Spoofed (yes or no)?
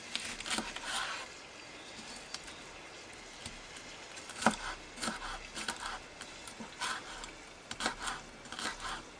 no